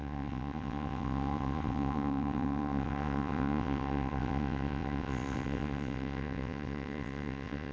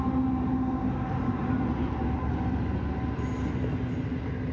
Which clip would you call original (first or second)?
second